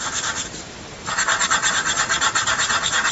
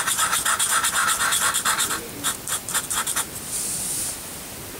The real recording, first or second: second